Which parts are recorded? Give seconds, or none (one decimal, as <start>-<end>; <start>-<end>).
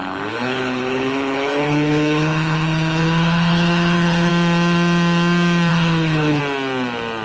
4.3-5.7; 6.4-7.2